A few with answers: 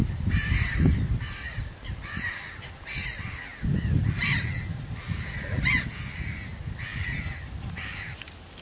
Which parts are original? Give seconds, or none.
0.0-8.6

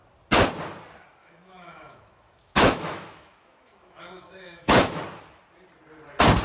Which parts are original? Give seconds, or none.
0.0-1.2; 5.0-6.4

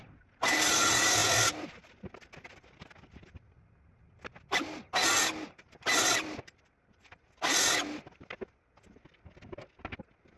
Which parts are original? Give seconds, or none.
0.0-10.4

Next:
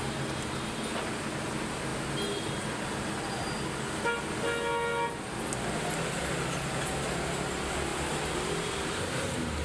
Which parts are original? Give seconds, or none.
0.0-9.6